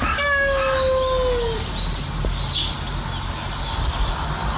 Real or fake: real